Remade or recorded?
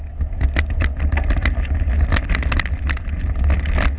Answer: recorded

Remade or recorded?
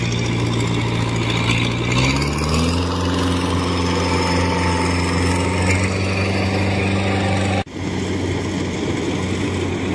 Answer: recorded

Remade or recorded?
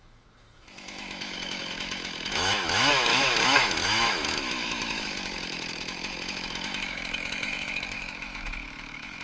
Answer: remade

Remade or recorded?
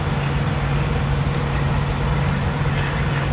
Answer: recorded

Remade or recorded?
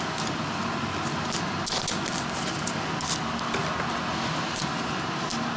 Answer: recorded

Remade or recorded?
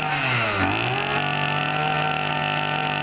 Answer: recorded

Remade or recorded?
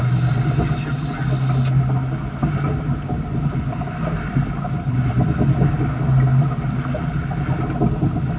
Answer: recorded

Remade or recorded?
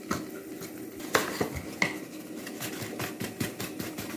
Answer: recorded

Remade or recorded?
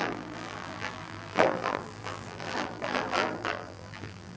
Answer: remade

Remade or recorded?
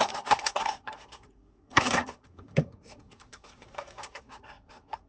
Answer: remade